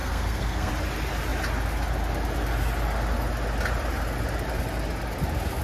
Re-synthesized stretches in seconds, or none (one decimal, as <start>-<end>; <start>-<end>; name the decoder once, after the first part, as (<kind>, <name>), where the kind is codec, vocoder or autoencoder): 0.0-0.7 (codec, SNAC)